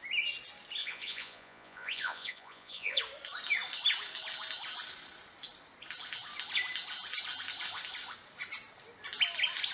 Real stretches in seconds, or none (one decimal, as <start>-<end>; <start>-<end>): 0.0-0.8; 3.0-9.7